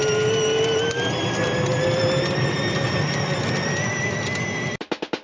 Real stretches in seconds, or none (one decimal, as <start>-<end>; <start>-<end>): 0.0-5.2